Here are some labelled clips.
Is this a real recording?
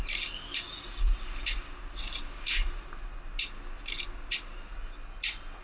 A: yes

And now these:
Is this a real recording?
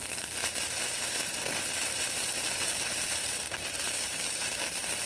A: no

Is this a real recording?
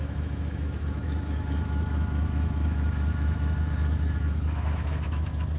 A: no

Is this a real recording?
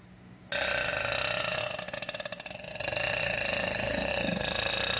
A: yes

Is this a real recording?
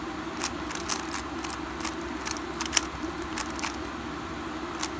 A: yes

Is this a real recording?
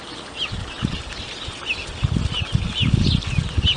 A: yes